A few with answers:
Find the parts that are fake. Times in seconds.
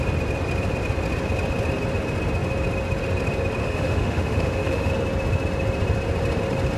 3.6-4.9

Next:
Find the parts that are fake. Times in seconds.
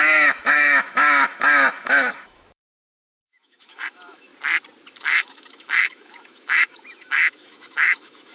0.0-4.3; 5.0-8.3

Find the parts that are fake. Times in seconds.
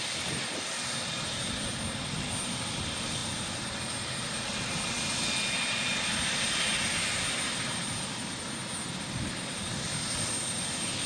none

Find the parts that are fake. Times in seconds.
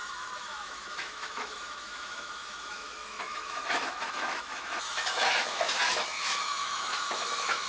0.0-7.7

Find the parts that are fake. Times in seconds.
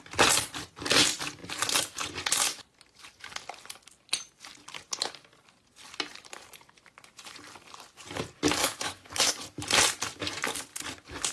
8.6-9.3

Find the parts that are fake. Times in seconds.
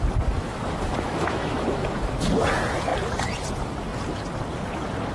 0.4-2.1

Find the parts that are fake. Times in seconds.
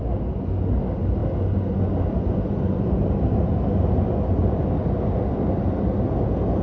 none